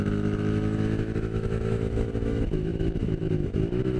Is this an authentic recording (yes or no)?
no